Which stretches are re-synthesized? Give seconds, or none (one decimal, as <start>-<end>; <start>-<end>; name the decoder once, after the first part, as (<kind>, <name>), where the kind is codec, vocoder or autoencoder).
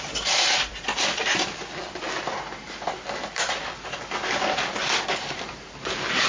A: none